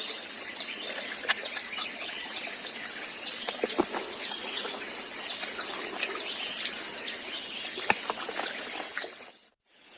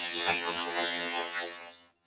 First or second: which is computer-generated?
second